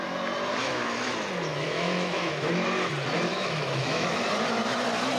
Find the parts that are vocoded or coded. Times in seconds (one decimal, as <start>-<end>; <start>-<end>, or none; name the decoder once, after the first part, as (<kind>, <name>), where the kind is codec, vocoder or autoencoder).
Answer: 0.6-1.1 (autoencoder, DAC-VAE); 1.5-2.5; 3.3-4.2

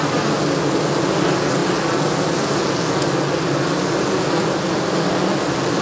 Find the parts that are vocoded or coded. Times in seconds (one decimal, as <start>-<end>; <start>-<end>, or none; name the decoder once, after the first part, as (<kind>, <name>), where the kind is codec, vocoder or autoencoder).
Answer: none

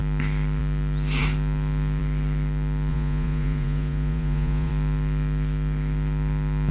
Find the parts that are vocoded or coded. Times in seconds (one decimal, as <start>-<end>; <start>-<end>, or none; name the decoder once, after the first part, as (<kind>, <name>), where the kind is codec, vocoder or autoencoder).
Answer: 2.9-4.7 (vocoder, Vocos)

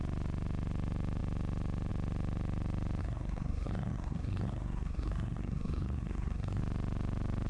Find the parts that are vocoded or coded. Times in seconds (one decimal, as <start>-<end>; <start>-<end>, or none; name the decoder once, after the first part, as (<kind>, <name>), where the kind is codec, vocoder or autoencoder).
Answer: 3.0-6.6 (codec, SNAC)

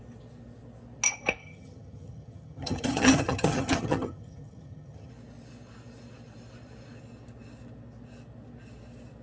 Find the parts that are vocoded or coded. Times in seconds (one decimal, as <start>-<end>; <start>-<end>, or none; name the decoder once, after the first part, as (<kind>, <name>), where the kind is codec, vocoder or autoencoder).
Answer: 1.4-5.1 (vocoder, HiFi-GAN)